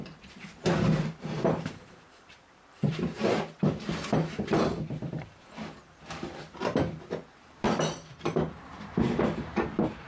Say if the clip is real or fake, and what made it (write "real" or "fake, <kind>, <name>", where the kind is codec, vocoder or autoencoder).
fake, vocoder, BigVGAN v2